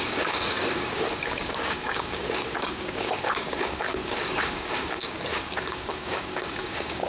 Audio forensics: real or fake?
fake